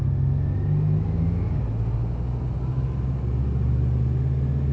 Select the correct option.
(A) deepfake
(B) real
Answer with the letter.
B